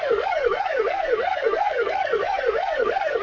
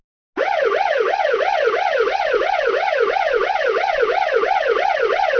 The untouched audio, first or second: second